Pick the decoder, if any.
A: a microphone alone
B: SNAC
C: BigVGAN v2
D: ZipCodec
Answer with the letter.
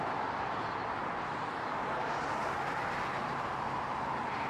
A